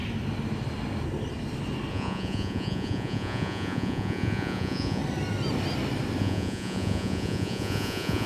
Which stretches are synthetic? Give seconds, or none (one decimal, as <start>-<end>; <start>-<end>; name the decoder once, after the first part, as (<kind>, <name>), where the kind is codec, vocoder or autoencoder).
1.9-5.0 (vocoder, Vocos); 6.2-8.3